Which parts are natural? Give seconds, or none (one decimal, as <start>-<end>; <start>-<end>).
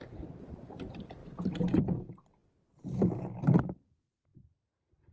1.2-1.8